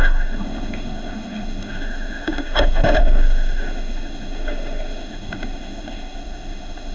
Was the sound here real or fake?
fake